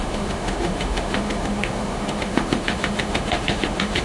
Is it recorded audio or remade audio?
remade